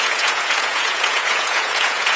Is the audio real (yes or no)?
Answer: no